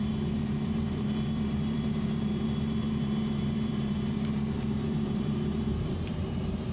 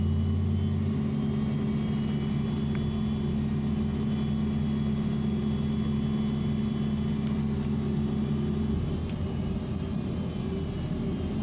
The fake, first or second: first